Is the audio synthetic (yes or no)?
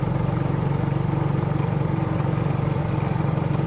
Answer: no